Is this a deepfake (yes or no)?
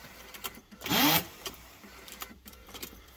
yes